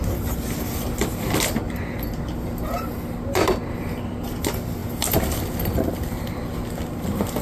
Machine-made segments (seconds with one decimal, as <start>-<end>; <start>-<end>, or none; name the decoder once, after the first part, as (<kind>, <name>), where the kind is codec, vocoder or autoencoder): none